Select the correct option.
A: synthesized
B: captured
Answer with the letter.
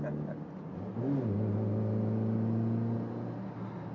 B